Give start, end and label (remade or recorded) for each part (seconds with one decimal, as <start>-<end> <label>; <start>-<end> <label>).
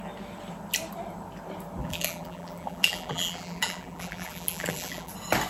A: 0.0-1.8 recorded; 1.8-5.1 remade; 5.1-5.5 recorded